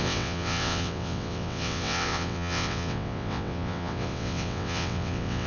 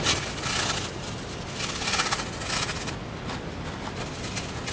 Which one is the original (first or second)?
second